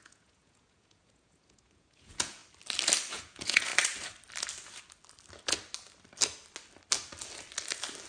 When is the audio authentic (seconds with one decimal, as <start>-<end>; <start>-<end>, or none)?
2.4-3.1; 3.7-8.1